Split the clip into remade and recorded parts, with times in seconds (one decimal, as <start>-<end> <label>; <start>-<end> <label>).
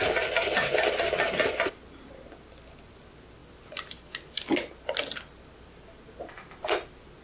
0.0-7.2 recorded